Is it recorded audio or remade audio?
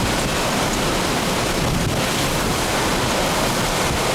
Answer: recorded